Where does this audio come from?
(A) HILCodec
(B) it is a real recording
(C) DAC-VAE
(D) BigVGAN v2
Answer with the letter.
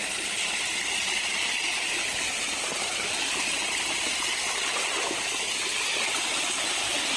B